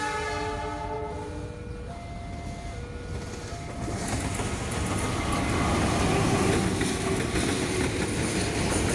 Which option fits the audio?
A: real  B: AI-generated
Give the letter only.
A